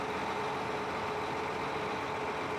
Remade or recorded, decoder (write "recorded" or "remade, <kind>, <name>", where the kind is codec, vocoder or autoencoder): recorded